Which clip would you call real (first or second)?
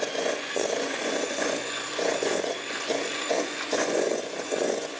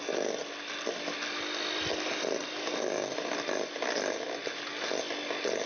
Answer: second